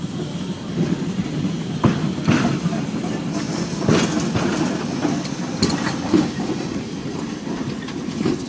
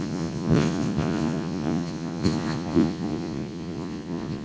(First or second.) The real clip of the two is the first